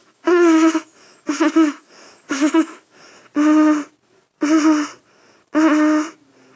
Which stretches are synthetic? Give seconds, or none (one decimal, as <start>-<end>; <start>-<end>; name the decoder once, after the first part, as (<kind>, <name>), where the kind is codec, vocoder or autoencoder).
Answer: 0.0-3.1 (autoencoder, DAC-VAE)